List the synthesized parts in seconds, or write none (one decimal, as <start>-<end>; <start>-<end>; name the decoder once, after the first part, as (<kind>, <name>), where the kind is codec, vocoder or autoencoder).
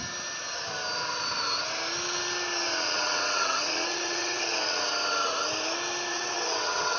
2.6-4.9 (vocoder, WaveNeXt); 6.1-7.0